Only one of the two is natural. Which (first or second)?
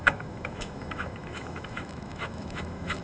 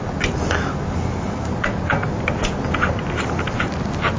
second